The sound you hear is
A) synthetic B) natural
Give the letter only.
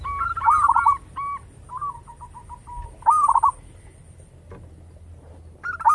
B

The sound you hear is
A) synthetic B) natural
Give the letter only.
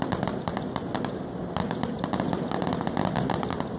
B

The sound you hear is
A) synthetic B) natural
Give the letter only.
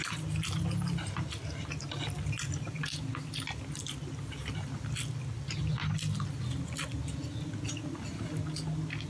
B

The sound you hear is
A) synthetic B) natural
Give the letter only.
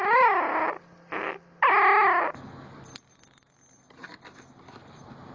A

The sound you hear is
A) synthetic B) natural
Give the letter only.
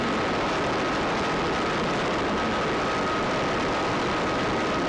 B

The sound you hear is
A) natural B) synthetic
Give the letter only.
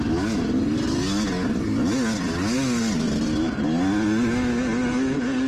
A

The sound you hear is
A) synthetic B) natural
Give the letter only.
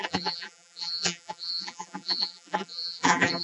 A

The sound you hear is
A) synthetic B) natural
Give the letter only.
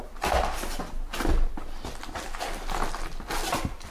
B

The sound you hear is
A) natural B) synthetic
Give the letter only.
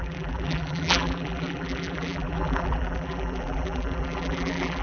B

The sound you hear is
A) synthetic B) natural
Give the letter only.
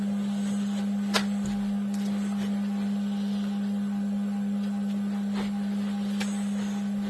B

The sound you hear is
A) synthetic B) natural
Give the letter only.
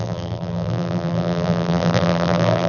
A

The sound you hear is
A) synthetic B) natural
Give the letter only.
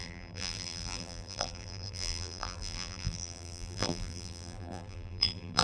A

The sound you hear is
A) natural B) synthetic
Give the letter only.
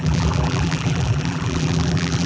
B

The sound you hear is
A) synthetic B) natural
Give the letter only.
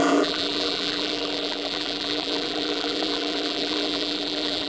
A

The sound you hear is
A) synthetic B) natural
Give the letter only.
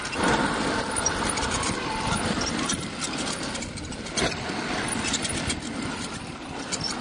B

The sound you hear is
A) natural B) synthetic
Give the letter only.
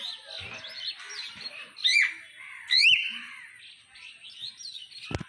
A